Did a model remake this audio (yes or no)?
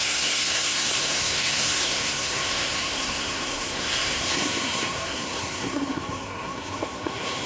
yes